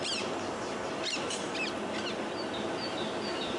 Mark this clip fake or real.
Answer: real